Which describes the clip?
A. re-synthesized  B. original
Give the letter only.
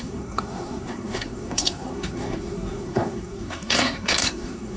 A